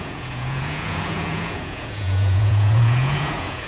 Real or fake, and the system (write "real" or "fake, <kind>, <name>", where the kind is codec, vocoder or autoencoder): fake, vocoder, Vocos